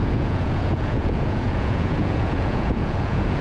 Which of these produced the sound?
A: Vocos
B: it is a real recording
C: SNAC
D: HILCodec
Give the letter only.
A